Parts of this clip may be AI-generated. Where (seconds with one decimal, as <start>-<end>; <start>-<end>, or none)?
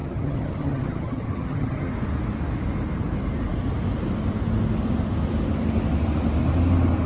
0.0-1.9